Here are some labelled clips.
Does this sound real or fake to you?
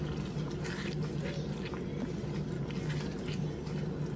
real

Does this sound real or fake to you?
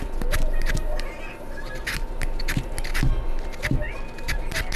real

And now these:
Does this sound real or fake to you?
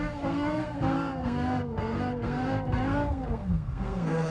fake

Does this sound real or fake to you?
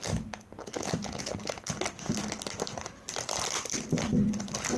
real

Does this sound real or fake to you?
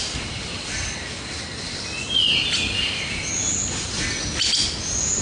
real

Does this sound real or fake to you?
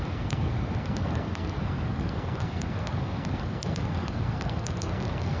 fake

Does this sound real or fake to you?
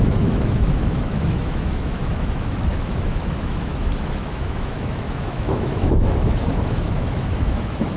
fake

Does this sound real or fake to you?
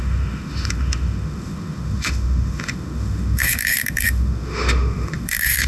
fake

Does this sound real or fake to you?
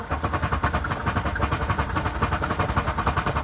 real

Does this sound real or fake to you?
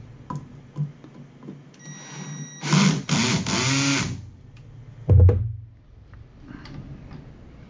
real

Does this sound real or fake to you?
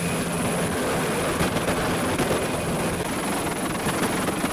real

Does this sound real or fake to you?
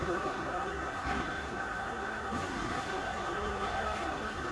fake